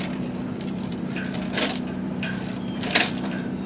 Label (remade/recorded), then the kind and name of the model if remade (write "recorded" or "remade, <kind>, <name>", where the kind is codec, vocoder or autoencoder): remade, vocoder, BigVGAN v2